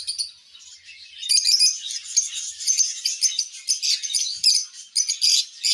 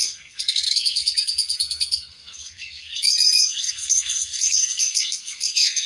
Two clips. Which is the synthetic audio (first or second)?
second